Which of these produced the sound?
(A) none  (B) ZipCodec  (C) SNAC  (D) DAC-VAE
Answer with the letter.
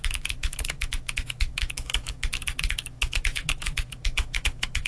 D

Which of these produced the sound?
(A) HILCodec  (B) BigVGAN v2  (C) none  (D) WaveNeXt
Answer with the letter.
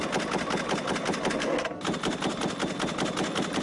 C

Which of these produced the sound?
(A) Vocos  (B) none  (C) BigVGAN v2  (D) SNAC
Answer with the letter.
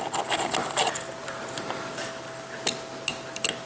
B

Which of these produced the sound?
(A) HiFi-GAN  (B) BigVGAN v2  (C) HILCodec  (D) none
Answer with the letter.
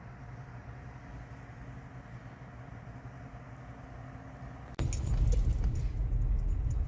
D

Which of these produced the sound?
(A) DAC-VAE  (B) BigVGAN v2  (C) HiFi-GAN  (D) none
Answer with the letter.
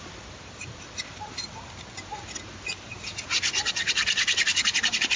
B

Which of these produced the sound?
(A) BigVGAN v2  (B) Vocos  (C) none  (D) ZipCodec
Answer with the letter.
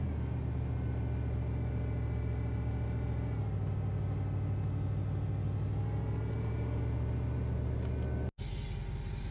C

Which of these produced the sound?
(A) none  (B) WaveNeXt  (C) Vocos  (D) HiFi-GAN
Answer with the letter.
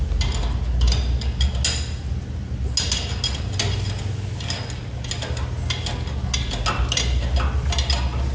A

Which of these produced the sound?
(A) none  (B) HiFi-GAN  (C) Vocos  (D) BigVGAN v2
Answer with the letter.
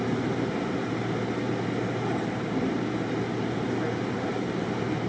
A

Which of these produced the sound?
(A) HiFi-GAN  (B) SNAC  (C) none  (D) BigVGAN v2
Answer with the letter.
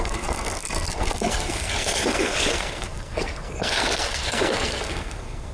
B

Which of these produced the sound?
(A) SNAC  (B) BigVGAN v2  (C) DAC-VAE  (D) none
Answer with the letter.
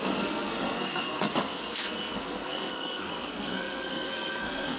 A